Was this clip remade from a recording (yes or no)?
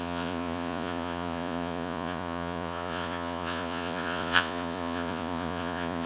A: yes